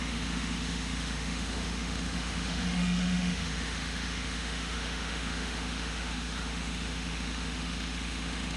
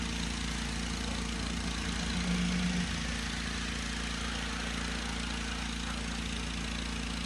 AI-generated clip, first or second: first